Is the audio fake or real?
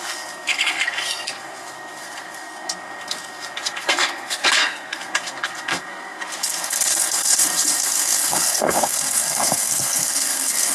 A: fake